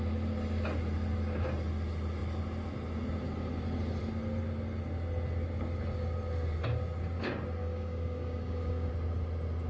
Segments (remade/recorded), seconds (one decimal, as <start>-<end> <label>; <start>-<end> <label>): 0.0-7.6 recorded; 7.6-8.9 remade; 8.9-9.7 recorded